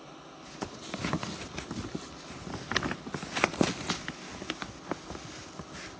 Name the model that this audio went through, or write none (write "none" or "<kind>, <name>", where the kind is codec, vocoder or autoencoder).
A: none